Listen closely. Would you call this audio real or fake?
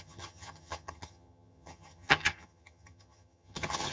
fake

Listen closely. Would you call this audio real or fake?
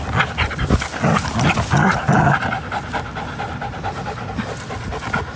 real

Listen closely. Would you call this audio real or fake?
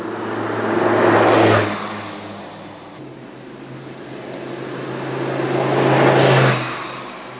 real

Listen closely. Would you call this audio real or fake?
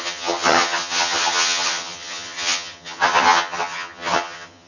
fake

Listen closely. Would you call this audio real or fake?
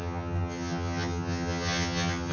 fake